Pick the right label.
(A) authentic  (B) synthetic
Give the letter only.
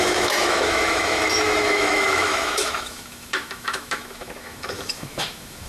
B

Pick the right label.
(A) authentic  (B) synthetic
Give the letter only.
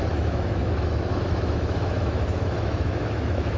B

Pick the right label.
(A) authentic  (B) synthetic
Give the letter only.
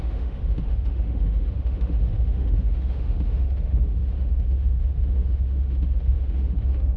B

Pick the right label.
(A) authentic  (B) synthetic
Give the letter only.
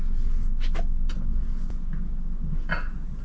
A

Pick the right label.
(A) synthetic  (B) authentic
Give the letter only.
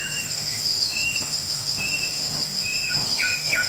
A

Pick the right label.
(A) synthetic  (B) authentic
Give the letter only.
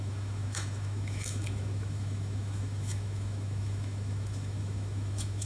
A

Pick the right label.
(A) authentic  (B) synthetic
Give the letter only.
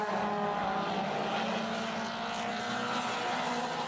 A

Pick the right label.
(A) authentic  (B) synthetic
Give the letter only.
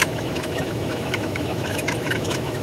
B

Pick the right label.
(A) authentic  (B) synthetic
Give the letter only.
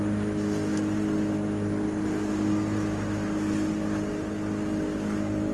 A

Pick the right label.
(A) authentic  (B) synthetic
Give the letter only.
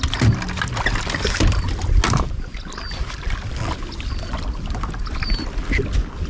A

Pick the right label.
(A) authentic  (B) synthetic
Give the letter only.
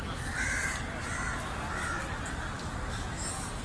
A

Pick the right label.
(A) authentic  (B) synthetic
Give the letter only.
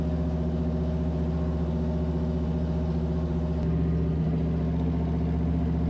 A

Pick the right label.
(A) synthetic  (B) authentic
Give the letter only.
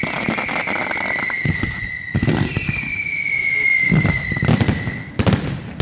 B